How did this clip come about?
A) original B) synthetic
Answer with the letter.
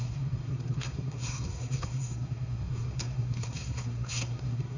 B